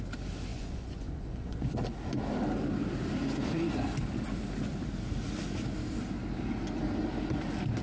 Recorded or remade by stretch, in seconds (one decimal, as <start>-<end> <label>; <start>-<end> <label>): 0.0-0.5 recorded; 0.5-1.7 remade; 1.7-7.8 recorded